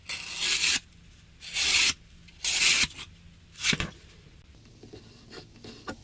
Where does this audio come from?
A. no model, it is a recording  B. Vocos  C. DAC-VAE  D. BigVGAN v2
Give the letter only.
A